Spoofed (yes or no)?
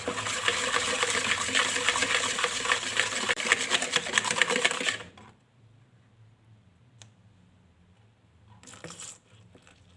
yes